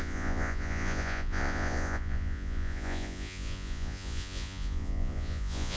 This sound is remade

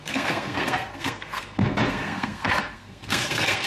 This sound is remade